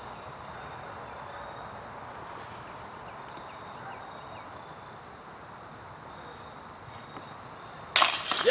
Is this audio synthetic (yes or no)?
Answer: no